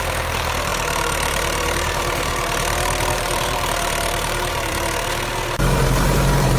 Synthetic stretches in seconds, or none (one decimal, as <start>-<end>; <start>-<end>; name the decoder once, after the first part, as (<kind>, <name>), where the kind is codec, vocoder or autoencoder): 0.0-6.6 (vocoder, BigVGAN v2)